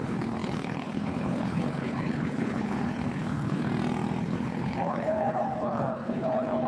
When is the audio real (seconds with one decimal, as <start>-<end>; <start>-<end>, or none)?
3.7-4.2